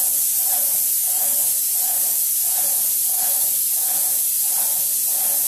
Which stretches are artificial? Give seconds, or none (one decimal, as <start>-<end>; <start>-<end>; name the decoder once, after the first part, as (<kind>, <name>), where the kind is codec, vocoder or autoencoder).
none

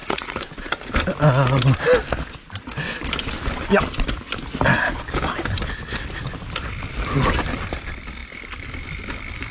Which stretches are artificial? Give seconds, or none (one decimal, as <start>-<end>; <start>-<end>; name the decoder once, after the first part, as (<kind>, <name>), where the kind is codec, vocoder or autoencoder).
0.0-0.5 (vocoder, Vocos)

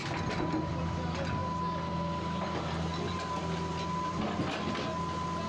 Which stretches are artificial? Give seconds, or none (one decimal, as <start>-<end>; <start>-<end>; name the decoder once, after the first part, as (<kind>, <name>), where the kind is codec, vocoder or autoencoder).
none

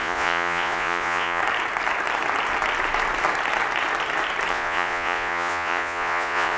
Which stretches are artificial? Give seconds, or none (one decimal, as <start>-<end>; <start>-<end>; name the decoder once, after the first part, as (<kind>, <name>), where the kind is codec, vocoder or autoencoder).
0.0-1.4 (vocoder, Vocos); 4.5-6.6

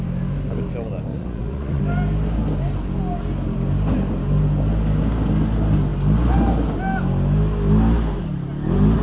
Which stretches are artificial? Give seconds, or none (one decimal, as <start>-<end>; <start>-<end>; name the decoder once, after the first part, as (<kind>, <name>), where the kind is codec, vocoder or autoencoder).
1.1-1.8 (vocoder, Vocos)